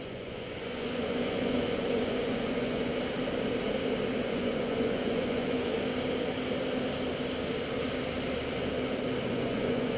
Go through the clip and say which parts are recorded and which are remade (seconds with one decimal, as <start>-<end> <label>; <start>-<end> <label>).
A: 0.0-2.9 remade; 2.9-4.2 recorded; 4.2-5.7 remade; 5.7-9.3 recorded; 9.3-10.0 remade